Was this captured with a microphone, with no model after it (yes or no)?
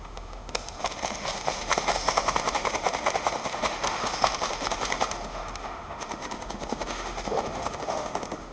no